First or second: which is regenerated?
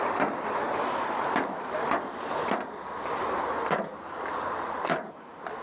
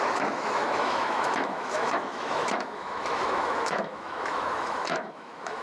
second